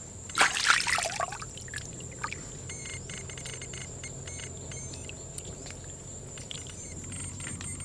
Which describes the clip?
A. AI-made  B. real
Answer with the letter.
B